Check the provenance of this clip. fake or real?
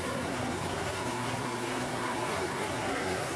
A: fake